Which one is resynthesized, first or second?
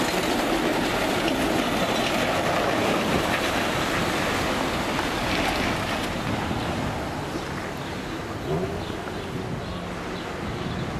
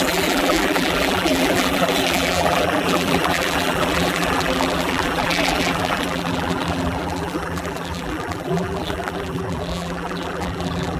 second